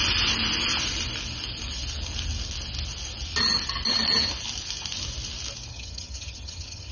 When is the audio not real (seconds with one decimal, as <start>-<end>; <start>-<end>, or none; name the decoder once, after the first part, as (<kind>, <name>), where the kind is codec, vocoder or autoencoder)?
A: 5.7-6.9 (vocoder, HiFi-GAN)